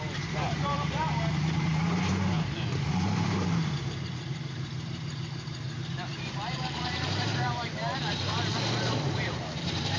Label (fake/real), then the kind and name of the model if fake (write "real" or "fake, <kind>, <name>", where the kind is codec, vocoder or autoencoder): fake, vocoder, BigVGAN v2